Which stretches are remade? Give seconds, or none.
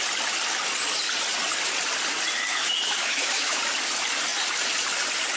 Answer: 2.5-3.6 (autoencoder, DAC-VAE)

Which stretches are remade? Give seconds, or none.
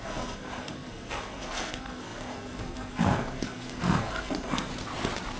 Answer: 0.0-4.7 (codec, SNAC)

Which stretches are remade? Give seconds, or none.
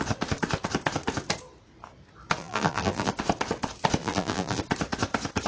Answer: 2.4-3.1 (vocoder, BigVGAN v2); 4.0-4.6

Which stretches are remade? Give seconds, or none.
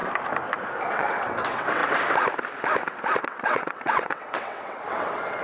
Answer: 0.9-1.8 (vocoder, WaveNeXt); 3.2-5.4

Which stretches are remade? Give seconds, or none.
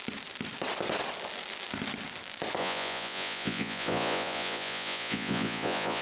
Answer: 2.6-6.0 (vocoder, Vocos)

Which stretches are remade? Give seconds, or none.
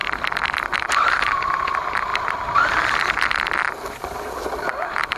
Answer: none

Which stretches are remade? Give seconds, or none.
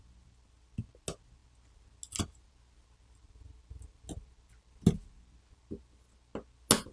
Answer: none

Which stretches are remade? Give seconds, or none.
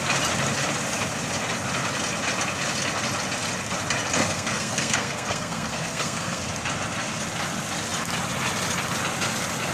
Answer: 4.2-6.4 (codec, SNAC)